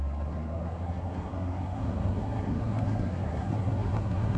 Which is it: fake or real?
fake